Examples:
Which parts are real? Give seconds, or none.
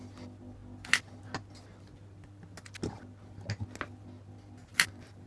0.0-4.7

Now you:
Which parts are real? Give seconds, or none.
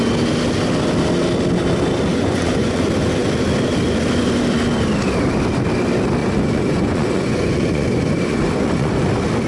0.0-2.1; 2.8-6.2; 9.1-9.5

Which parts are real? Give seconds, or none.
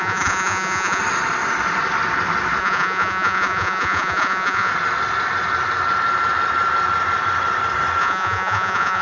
1.0-2.6; 4.7-8.0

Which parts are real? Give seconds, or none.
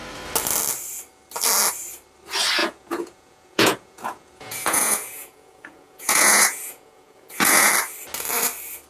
0.0-2.6; 7.7-8.9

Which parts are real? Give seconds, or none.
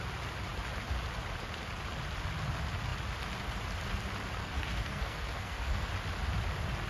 0.0-4.4; 5.9-6.9